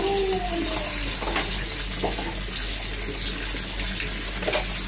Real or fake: real